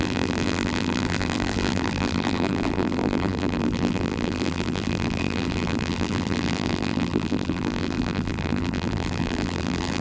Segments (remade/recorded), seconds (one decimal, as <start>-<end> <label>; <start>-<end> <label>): 0.0-10.0 remade